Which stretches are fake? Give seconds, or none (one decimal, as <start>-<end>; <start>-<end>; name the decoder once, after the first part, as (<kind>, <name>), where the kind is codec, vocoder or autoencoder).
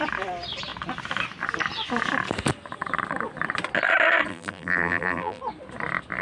4.3-5.4 (vocoder, BigVGAN v2)